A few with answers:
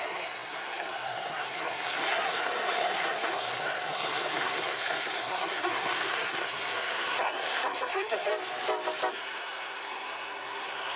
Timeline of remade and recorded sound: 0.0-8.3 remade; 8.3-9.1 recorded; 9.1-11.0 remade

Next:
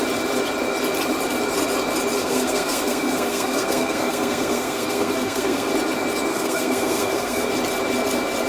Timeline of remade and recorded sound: 0.0-2.2 recorded; 2.2-5.7 remade; 5.7-6.3 recorded; 6.3-7.5 remade; 7.5-8.5 recorded

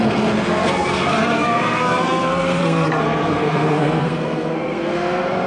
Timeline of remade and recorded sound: 0.0-5.5 remade

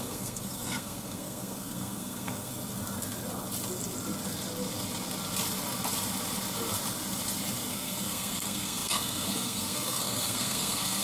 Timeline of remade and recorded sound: 0.0-2.5 remade; 2.5-7.7 recorded; 7.7-11.0 remade

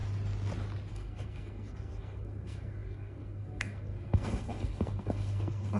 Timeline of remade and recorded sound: 0.0-0.9 recorded; 0.9-5.8 remade

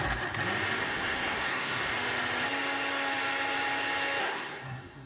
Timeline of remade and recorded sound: 0.0-0.8 recorded; 0.8-1.9 remade; 1.9-4.2 recorded; 4.2-5.1 remade